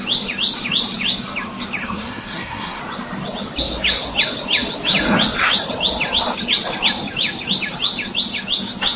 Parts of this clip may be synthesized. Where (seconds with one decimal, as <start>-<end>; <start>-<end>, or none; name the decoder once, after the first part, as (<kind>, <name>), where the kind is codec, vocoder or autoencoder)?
1.8-2.8 (codec, SNAC)